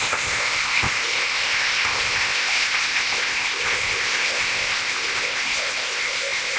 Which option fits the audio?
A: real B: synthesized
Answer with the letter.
B